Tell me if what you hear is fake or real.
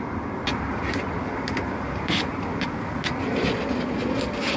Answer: real